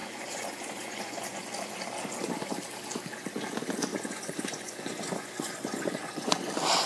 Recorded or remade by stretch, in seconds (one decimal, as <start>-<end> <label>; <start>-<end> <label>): 0.0-1.4 remade; 1.4-3.9 recorded; 3.9-6.5 remade; 6.5-6.9 recorded